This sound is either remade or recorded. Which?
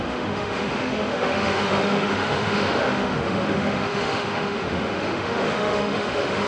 remade